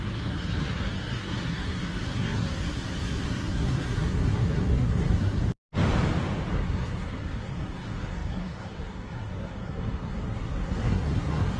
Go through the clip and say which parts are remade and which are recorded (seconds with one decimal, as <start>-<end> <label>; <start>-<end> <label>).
0.0-5.4 remade; 5.4-6.5 recorded; 6.5-11.6 remade